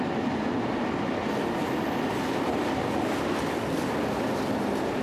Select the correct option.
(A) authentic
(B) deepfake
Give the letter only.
A